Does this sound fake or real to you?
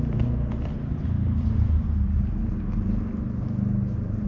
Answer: real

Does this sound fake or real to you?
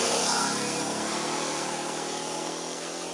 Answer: fake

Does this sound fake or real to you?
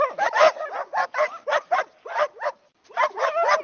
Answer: real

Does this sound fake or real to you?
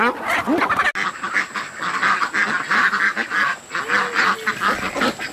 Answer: real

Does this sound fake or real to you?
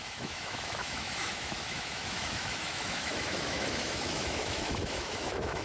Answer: fake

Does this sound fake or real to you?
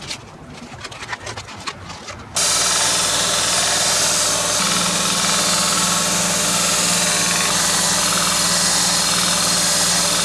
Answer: real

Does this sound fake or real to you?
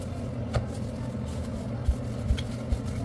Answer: real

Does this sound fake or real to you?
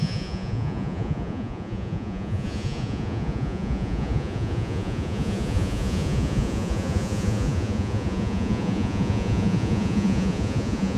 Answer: fake